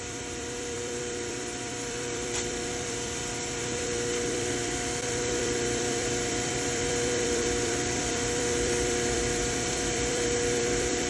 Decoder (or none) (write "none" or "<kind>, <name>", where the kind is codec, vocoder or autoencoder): vocoder, BigVGAN v2